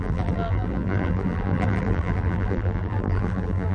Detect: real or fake fake